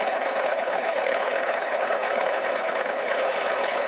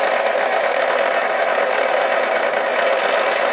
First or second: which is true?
second